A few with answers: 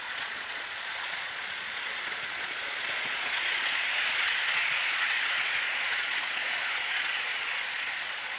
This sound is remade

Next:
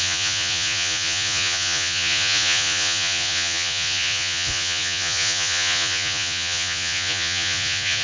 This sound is remade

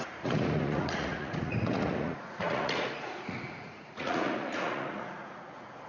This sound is remade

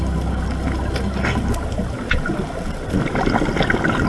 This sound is recorded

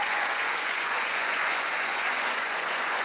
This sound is remade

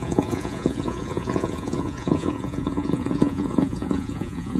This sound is remade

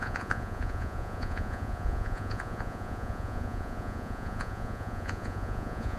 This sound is remade